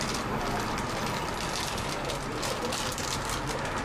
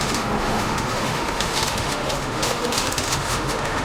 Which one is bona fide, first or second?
first